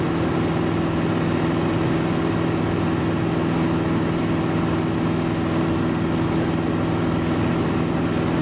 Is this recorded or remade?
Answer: recorded